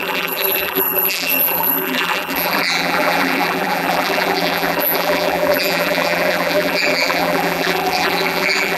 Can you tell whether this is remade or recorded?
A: remade